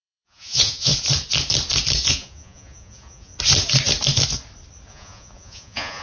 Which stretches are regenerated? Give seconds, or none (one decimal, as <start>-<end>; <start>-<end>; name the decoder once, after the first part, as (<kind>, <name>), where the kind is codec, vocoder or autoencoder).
0.0-0.9 (vocoder, Vocos); 2.1-3.3; 4.9-6.0